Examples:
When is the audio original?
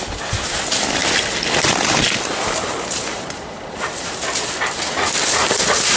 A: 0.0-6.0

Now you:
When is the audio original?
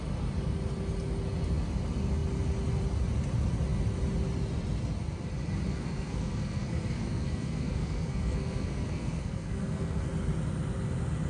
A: 0.0-5.7; 10.1-11.3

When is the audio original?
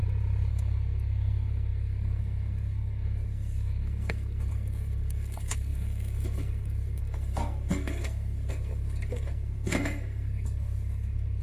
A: 0.0-0.5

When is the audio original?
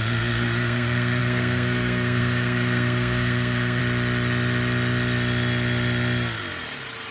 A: 3.8-7.1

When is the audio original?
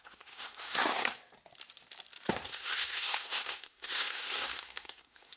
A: 1.2-2.3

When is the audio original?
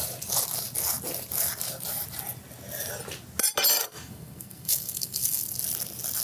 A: 0.0-3.8; 5.4-6.2